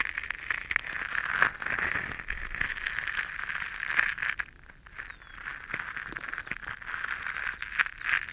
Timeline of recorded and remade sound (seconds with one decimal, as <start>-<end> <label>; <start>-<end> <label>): 0.0-8.3 recorded